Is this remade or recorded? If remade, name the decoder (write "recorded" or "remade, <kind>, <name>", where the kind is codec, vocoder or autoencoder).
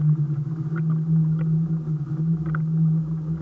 recorded